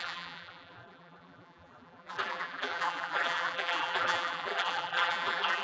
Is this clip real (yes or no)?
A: no